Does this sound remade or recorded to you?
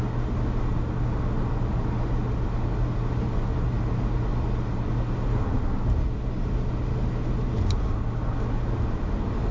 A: recorded